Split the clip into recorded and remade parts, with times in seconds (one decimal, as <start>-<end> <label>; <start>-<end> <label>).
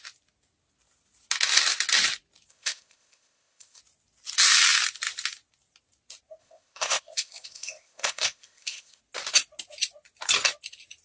0.0-2.5 recorded; 2.5-3.8 remade; 3.8-6.4 recorded; 6.4-9.0 remade; 9.0-11.0 recorded